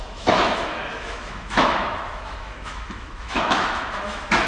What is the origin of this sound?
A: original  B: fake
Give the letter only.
B